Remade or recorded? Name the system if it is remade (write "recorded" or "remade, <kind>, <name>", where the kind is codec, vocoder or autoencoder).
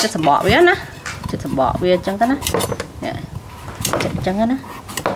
recorded